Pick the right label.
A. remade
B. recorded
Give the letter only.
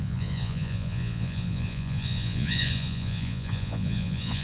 A